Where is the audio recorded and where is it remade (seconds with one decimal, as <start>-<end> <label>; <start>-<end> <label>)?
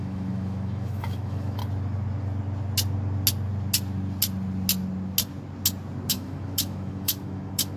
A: 0.0-1.6 remade; 1.6-6.1 recorded; 6.1-7.8 remade